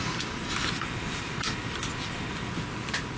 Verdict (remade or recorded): recorded